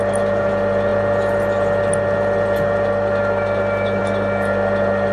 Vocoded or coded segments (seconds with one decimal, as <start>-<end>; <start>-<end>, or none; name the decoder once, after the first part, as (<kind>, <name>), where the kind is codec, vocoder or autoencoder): none